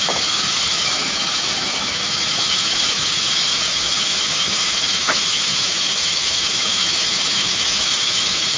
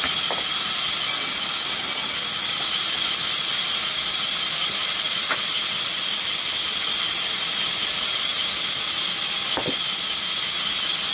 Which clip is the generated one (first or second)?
first